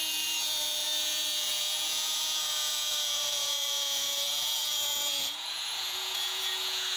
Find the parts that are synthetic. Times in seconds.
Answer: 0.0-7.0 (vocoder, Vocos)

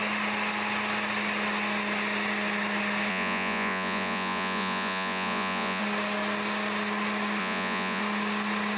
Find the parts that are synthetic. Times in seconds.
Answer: 3.1-5.8 (vocoder, Vocos); 7.4-8.0

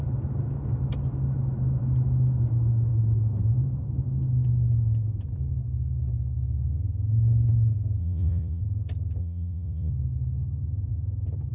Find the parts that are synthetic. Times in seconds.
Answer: 8.0-8.6 (vocoder, Vocos); 9.2-9.9

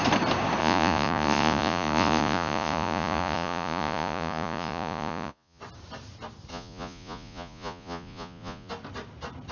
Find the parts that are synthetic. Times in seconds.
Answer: 0.6-5.6 (vocoder, Vocos); 6.5-8.7

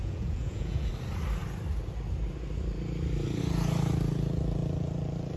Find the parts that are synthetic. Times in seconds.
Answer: 0.0-0.9 (vocoder, Vocos)

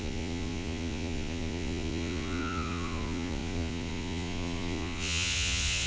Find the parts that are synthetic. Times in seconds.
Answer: 0.0-5.9 (vocoder, Vocos)

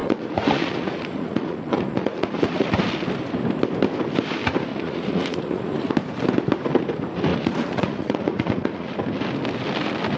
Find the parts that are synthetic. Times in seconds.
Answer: 0.0-2.7 (vocoder, Vocos); 4.7-5.9; 7.3-8.9